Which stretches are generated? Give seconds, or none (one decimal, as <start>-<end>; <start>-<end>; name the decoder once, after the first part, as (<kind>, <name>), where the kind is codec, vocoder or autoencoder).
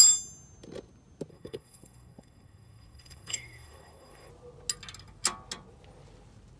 1.3-4.3 (codec, SNAC)